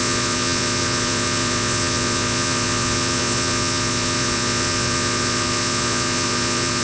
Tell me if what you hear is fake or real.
fake